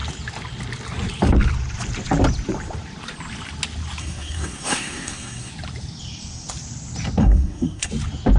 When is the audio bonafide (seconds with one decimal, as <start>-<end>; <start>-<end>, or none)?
0.0-4.0; 5.5-7.2; 7.9-8.4